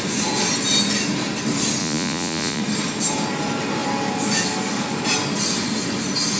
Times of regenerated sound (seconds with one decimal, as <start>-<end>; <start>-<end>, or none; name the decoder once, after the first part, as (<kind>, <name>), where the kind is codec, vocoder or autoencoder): 1.8-2.6 (vocoder, Vocos)